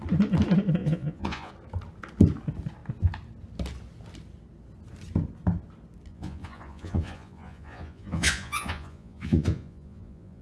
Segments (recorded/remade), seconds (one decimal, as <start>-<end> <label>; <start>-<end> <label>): 0.0-0.8 recorded; 0.8-1.5 remade; 1.5-6.1 recorded; 6.1-10.4 remade